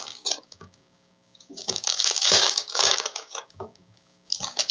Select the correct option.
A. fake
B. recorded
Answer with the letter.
A